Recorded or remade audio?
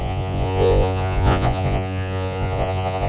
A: remade